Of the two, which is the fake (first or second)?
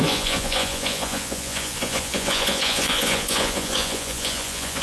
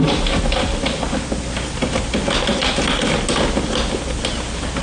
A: first